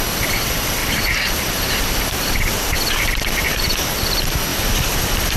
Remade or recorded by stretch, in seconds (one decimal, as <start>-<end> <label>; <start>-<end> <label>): 0.0-0.8 recorded; 0.8-4.0 remade; 4.0-4.5 recorded; 4.5-5.4 remade